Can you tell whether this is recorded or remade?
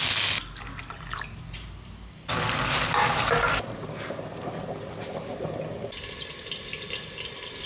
recorded